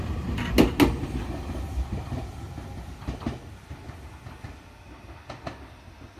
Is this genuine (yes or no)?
yes